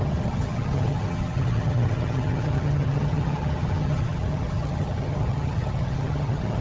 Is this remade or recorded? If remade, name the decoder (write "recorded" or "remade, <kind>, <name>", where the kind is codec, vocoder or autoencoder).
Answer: remade, vocoder, HiFi-GAN